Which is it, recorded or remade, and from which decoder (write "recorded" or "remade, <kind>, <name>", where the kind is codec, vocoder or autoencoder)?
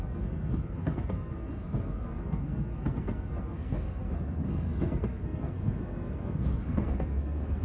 remade, codec, SNAC